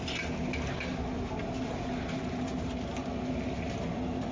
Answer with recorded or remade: recorded